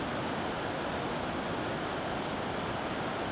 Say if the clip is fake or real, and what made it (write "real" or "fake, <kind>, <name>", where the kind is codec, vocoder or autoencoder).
real